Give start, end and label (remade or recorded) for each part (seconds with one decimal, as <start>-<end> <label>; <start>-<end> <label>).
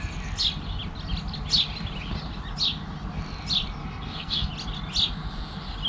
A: 0.0-3.8 recorded; 3.8-4.5 remade; 4.5-5.9 recorded